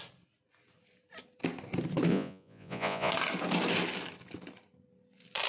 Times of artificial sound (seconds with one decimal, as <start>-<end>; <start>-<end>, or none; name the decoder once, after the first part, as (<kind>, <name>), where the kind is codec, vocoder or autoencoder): 2.1-3.1 (vocoder, Vocos)